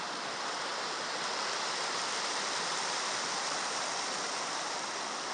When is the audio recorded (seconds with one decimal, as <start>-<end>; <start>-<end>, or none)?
0.0-5.3